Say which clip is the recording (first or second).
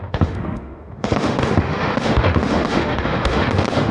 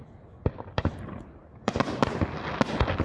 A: second